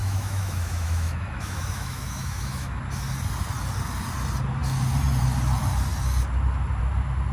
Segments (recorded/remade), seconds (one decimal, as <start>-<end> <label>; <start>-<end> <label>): 0.0-2.8 remade; 2.8-7.3 recorded